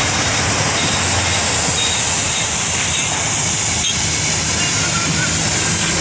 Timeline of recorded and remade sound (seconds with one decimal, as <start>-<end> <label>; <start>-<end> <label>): 0.0-2.2 recorded; 2.2-4.5 remade; 4.5-6.0 recorded